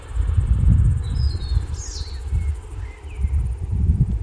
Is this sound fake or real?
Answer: real